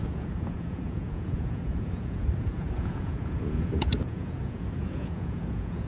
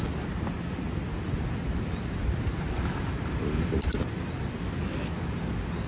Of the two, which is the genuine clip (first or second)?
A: second